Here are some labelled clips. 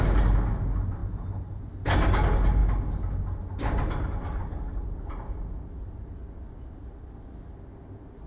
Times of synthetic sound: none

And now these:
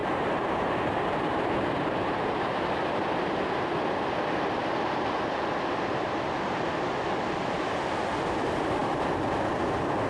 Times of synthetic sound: 0.0-3.0 (vocoder, BigVGAN v2); 4.6-5.9

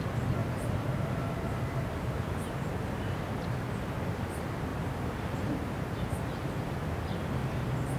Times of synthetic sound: 0.4-3.2 (vocoder, BigVGAN v2); 4.7-6.5

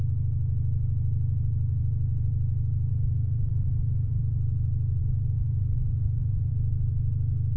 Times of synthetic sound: 2.9-4.2 (vocoder, BigVGAN v2); 5.0-6.5